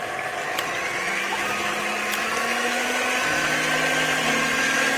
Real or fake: real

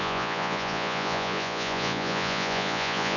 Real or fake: fake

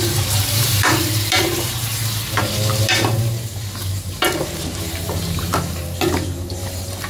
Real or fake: fake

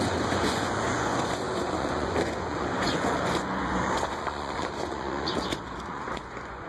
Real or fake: fake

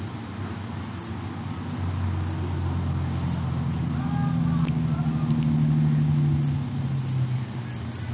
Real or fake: real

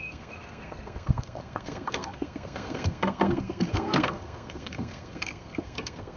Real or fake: fake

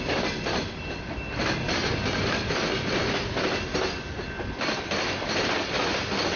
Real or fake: real